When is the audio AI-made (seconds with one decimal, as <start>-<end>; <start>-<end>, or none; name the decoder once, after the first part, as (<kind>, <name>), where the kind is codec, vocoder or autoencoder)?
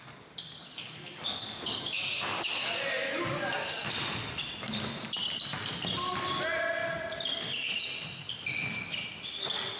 none